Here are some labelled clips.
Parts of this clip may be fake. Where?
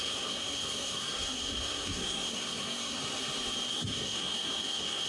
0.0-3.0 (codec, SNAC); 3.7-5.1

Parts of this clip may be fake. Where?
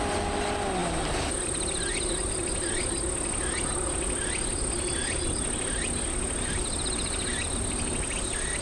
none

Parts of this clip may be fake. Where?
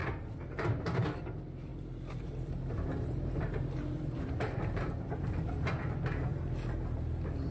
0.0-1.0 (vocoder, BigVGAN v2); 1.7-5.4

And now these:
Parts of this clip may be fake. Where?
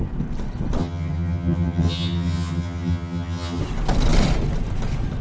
0.8-3.6 (vocoder, HiFi-GAN)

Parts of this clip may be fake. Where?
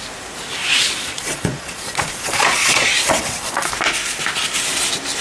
0.6-3.7 (vocoder, Vocos)